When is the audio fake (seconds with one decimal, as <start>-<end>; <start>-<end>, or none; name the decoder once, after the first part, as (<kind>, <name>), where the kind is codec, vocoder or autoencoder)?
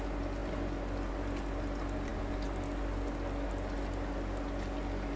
none